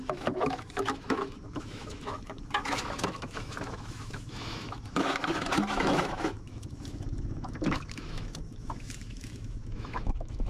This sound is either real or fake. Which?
fake